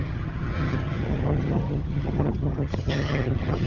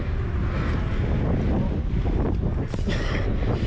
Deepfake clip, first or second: first